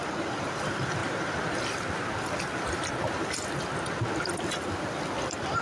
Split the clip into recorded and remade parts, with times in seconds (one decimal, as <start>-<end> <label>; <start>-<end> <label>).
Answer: 0.0-1.0 remade; 1.0-4.4 recorded; 4.4-5.6 remade